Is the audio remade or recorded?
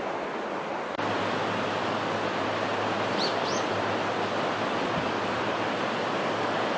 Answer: recorded